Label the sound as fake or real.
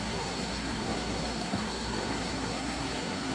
fake